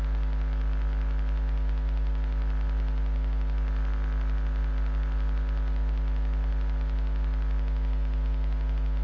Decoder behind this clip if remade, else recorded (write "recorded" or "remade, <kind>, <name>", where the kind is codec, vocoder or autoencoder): recorded